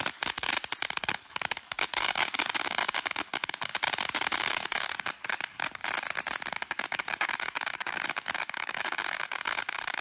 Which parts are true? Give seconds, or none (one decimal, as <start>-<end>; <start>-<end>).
0.5-1.0; 3.7-4.5; 5.8-6.5